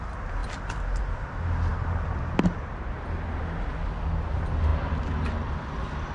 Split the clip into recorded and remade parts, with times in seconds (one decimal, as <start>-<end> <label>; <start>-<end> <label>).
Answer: 0.0-6.1 recorded